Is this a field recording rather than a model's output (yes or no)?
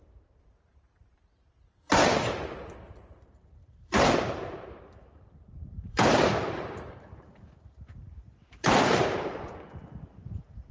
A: no